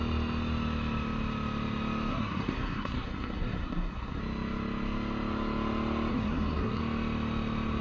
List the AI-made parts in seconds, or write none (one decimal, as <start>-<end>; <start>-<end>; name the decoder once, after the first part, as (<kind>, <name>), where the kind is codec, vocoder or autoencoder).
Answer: 2.1-4.2 (codec, SNAC); 6.1-6.8